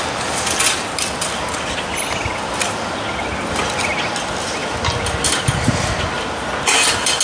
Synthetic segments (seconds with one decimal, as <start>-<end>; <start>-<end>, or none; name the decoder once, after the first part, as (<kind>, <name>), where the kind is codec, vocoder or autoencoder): none